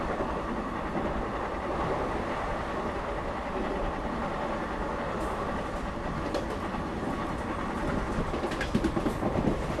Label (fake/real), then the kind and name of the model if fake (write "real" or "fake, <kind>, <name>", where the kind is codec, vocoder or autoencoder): real